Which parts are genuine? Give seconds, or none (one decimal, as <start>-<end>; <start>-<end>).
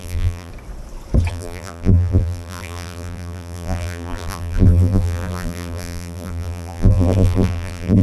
0.5-1.3